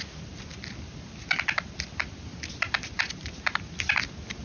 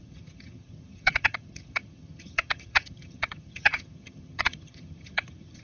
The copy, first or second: second